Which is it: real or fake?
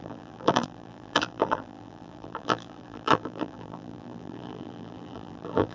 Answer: fake